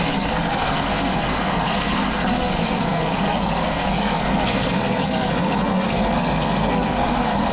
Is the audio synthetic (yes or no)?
yes